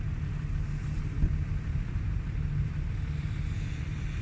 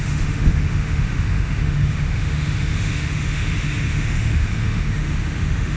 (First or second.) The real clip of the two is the first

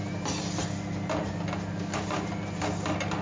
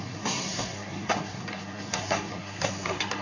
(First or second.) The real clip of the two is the first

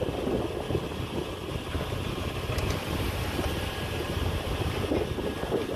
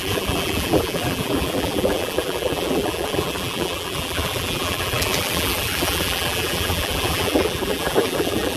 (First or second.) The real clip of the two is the first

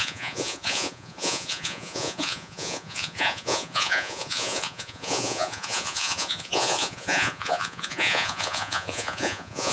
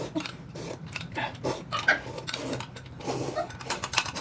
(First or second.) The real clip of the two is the second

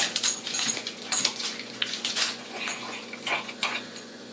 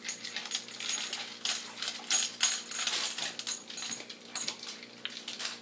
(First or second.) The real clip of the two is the second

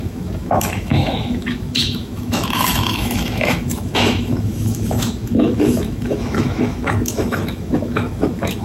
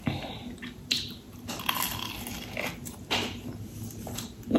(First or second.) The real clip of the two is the second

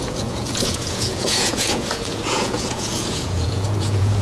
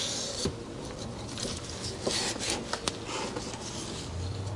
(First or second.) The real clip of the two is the second